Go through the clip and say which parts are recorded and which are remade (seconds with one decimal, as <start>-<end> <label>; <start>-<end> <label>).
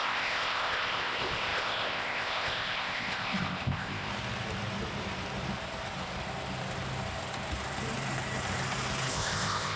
0.0-4.1 remade; 4.1-9.1 recorded; 9.1-9.8 remade